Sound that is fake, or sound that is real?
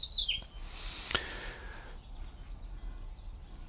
real